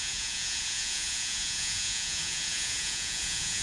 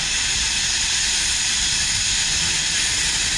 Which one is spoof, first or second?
first